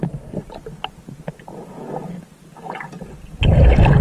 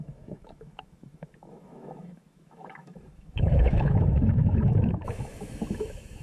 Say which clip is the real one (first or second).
first